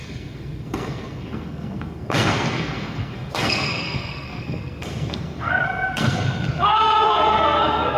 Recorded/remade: remade